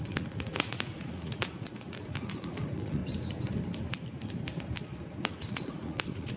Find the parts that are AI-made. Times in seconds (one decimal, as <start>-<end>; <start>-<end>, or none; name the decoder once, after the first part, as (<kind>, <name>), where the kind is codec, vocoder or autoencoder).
0.0-3.0 (vocoder, Vocos); 5.4-6.4